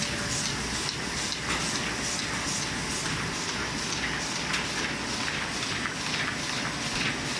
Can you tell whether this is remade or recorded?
recorded